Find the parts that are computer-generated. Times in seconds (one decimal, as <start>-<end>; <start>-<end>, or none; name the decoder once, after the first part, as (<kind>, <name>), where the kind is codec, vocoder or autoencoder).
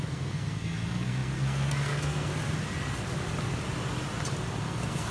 0.0-2.3 (codec, SNAC); 4.6-5.1